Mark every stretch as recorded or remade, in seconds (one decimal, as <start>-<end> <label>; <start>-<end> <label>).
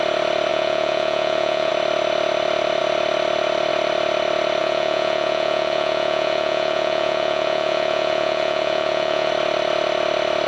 0.0-0.5 recorded; 0.5-1.7 remade; 1.7-4.6 recorded; 4.6-9.3 remade; 9.3-10.5 recorded